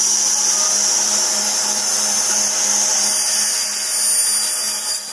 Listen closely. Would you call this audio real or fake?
real